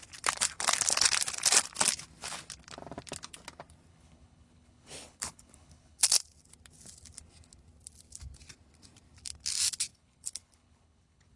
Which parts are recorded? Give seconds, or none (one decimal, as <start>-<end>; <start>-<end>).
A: 0.0-3.9; 6.0-9.9